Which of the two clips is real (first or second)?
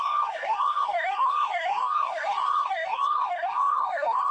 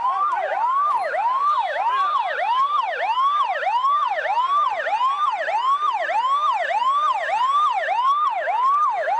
second